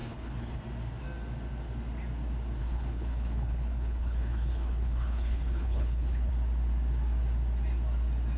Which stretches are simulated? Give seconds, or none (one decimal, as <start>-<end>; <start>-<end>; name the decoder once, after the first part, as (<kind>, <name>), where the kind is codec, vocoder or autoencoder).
0.0-0.6 (codec, HILCodec); 2.6-6.3